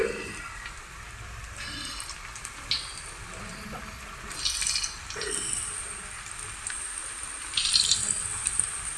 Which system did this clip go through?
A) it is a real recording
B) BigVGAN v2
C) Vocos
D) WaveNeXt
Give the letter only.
A